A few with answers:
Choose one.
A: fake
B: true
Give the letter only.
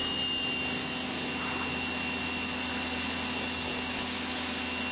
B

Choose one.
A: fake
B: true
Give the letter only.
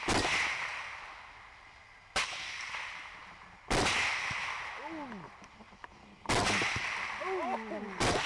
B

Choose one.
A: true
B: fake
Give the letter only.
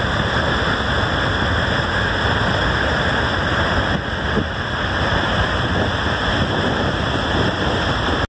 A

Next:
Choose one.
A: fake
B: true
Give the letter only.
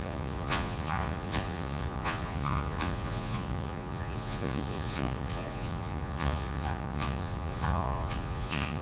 A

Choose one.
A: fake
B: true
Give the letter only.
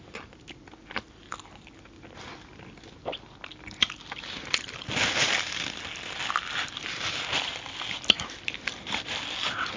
B